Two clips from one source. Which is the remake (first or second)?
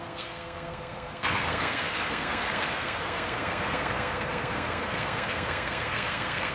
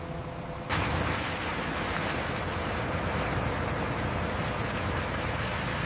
first